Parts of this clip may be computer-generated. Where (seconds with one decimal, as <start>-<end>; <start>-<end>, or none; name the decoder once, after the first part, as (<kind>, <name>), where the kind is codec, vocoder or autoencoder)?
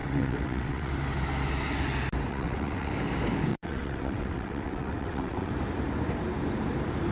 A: 0.0-0.9 (vocoder, WaveNeXt); 2.3-2.9; 3.5-5.5